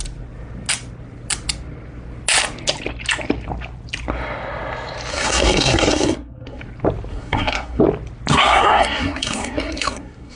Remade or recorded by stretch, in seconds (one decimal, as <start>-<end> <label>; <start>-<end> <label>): 0.0-5.1 recorded; 5.1-6.6 remade; 6.6-7.1 recorded; 7.1-7.8 remade; 7.8-8.3 recorded; 8.3-10.4 remade